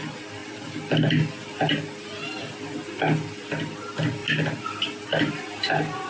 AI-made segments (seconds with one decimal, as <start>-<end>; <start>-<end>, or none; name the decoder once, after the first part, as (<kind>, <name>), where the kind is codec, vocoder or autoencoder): none